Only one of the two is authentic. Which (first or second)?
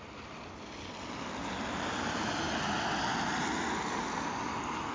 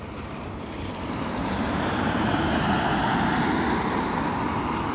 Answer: first